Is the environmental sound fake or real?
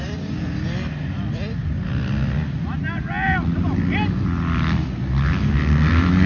real